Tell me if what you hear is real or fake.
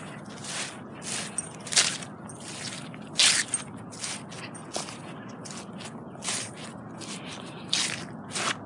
real